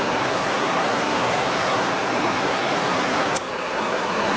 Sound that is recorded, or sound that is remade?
remade